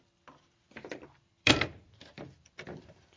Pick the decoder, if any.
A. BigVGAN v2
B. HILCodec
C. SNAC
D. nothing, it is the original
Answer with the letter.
A